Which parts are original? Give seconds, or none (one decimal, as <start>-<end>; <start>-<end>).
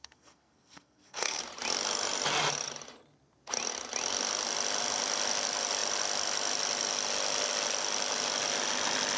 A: 1.4-9.2